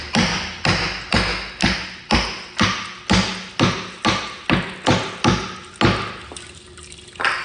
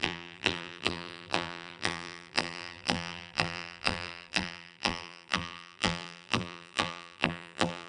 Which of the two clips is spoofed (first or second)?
second